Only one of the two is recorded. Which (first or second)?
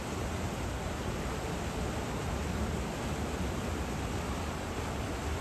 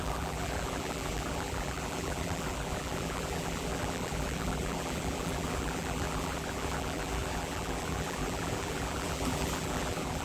first